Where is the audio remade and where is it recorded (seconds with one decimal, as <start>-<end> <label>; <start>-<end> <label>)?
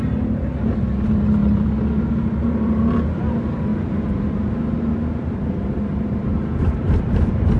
0.0-3.7 recorded; 3.7-7.6 remade